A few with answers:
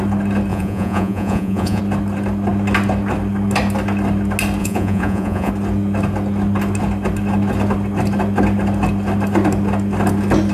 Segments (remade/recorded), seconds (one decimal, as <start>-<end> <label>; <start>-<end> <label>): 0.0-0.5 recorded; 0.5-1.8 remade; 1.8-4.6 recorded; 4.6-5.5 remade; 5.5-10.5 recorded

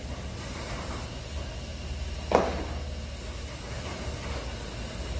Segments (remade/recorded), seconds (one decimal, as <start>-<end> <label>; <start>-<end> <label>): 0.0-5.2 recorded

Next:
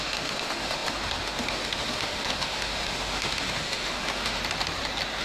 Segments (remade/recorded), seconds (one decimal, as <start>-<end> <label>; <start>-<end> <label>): 0.0-4.4 remade; 4.4-5.2 recorded